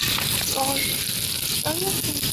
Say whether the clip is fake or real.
real